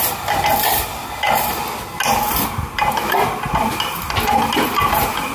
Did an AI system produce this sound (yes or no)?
no